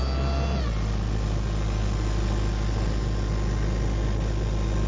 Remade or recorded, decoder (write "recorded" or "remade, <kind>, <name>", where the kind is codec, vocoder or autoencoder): recorded